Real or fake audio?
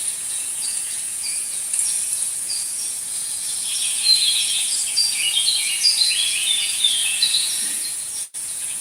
fake